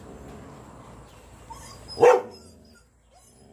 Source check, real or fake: real